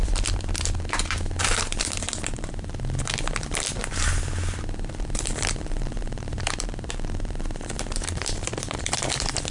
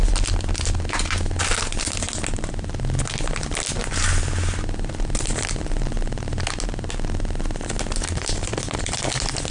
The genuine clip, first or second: second